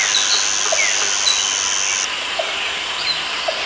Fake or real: real